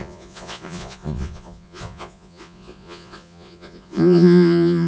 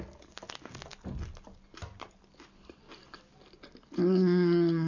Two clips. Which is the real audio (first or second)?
second